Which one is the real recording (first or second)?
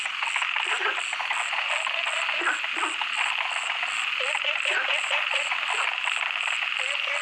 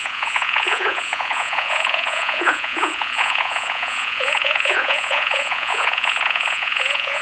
first